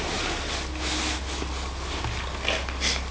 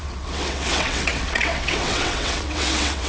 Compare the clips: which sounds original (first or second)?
first